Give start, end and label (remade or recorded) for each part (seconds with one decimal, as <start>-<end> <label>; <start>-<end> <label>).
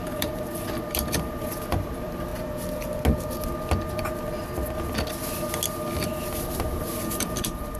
0.0-2.3 remade; 2.3-6.4 recorded; 6.4-7.8 remade